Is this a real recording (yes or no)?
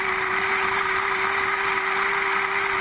yes